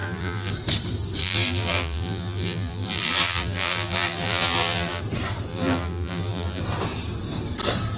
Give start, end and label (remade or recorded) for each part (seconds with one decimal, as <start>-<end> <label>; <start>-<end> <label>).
0.0-0.5 remade; 0.5-1.2 recorded; 1.2-5.0 remade; 5.0-5.5 recorded; 5.5-6.6 remade; 6.6-8.0 recorded